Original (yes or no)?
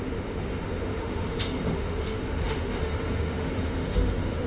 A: no